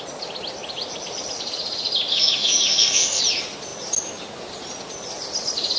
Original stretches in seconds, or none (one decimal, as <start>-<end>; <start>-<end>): 0.0-2.1; 3.2-5.8